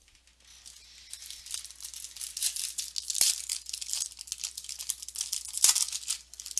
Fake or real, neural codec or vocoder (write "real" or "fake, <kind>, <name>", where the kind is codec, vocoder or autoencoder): real